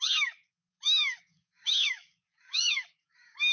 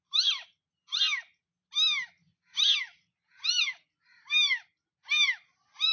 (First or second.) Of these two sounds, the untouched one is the second